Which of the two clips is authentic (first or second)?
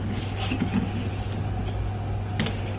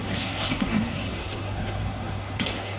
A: first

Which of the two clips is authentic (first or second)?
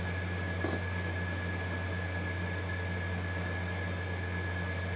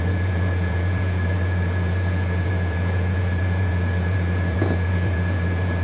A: first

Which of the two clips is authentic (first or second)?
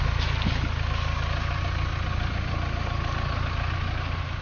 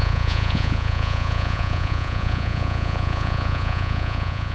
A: first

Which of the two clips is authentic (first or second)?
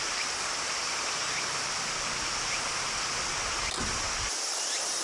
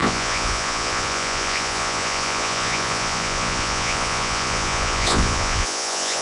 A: first